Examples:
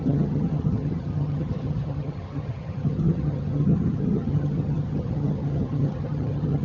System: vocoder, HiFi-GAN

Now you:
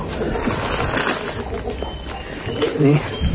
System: none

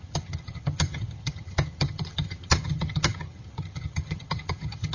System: vocoder, HiFi-GAN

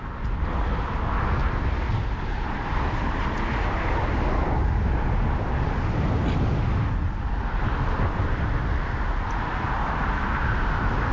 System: none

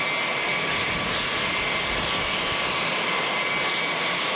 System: none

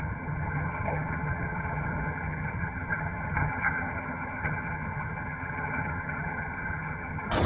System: vocoder, HiFi-GAN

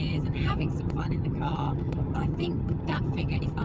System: vocoder, HiFi-GAN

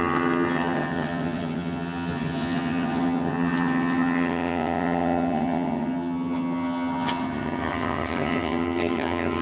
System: vocoder, HiFi-GAN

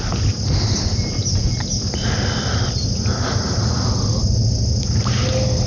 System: none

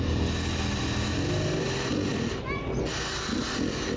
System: none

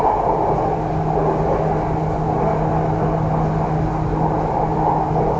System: none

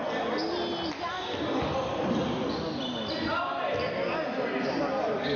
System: none